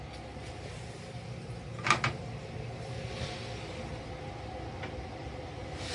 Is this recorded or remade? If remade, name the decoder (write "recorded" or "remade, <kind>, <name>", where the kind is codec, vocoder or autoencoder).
recorded